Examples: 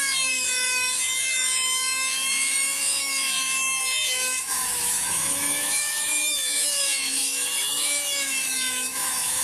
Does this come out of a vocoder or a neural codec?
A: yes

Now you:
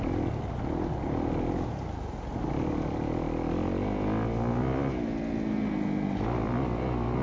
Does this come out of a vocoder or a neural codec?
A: no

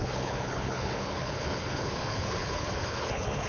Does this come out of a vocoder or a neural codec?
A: yes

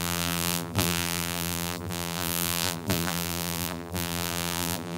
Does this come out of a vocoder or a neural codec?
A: yes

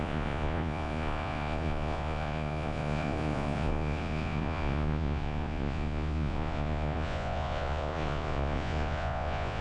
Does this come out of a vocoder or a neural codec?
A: yes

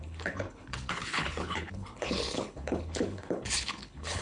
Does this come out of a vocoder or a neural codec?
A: yes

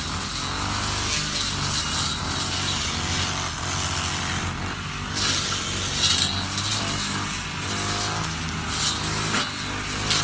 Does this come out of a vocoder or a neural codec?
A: no